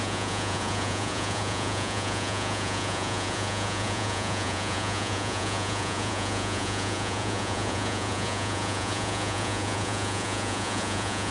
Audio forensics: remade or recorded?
remade